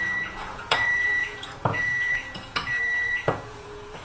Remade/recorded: remade